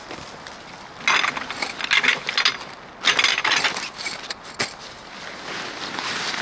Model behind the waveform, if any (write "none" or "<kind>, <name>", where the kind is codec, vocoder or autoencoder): none